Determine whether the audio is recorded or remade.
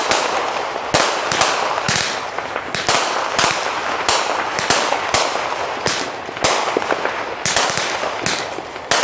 recorded